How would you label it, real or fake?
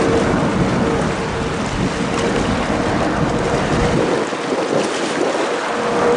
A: real